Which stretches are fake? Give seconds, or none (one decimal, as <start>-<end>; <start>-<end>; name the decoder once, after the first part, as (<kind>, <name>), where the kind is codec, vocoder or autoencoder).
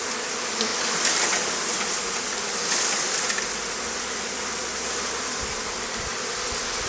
none